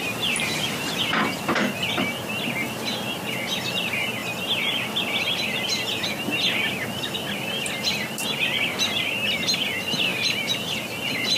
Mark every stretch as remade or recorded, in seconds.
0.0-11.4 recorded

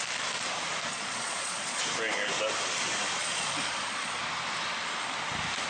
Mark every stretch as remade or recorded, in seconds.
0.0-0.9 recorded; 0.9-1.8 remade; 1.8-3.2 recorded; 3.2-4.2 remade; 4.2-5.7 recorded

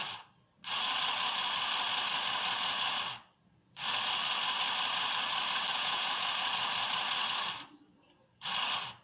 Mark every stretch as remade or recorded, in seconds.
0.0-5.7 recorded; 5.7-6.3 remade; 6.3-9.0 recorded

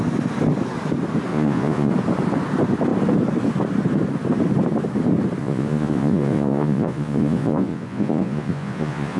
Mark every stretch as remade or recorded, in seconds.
0.0-1.3 recorded; 1.3-1.9 remade; 1.9-5.4 recorded; 5.4-9.2 remade

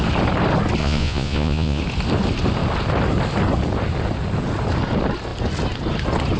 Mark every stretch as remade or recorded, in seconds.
0.0-0.8 recorded; 0.8-1.8 remade; 1.8-6.4 recorded

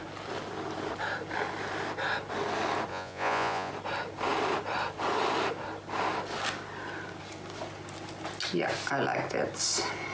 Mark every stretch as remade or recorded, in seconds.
0.0-2.9 recorded; 2.9-3.7 remade; 3.7-10.1 recorded

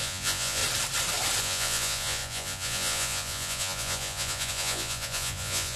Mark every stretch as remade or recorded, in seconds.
0.0-0.6 remade; 0.6-1.4 recorded; 1.4-5.8 remade

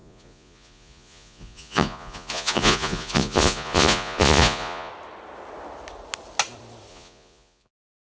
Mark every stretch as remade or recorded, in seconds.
0.0-4.9 remade; 4.9-6.9 recorded; 6.9-8.0 remade